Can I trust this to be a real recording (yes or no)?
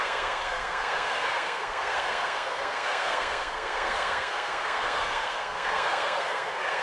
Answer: no